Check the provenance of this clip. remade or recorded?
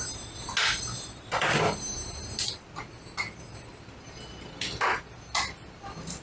recorded